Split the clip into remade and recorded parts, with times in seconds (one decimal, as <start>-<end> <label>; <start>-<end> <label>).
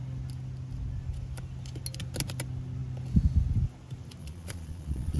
0.0-4.2 recorded; 4.2-5.2 remade